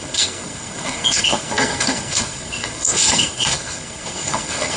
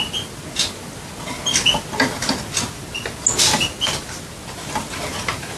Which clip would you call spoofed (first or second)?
first